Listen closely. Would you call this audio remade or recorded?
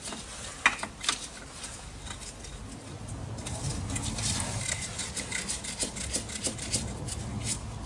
recorded